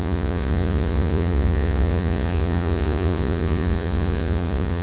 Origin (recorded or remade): remade